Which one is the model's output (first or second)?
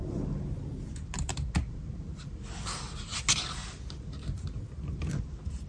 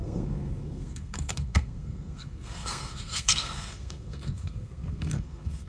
second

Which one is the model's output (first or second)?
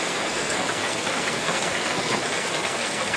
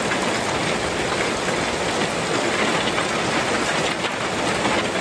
first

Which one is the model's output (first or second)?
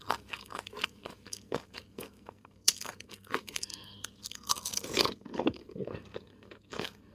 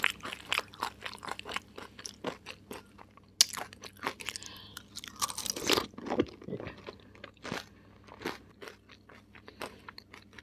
first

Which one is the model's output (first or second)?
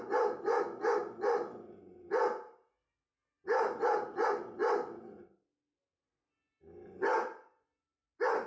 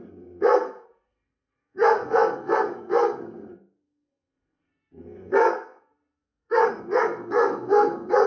second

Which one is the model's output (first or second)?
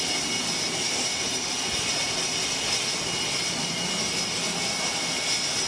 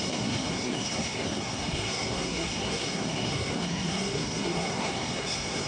second